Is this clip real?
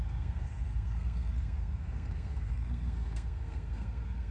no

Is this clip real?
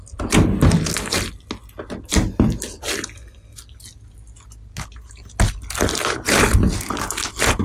yes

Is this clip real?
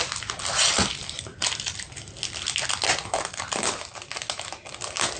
yes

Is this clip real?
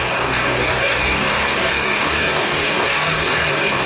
no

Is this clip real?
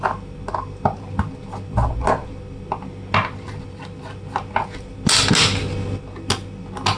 yes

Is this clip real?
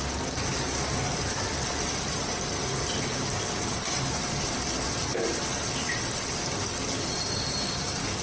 yes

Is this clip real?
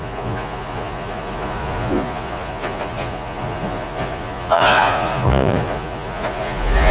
no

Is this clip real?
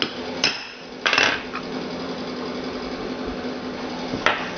yes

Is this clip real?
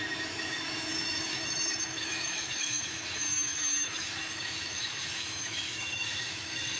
no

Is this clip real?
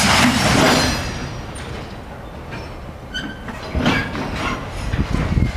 yes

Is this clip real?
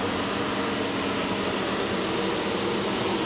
yes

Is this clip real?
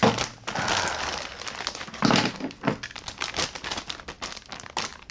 yes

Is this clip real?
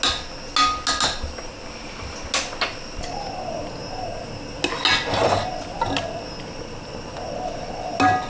yes